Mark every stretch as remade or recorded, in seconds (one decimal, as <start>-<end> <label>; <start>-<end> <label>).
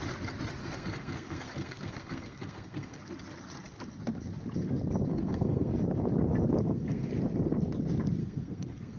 0.0-0.6 recorded; 0.6-3.0 remade; 3.0-5.1 recorded; 5.1-5.7 remade; 5.7-6.6 recorded; 6.6-7.1 remade; 7.1-8.2 recorded; 8.2-9.0 remade